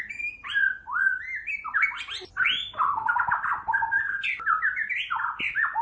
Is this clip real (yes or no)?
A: yes